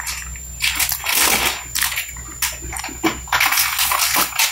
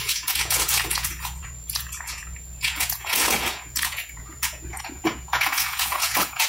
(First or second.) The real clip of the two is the first